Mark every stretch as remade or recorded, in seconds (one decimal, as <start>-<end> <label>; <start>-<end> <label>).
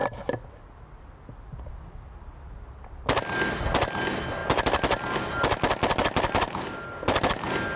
0.0-7.8 recorded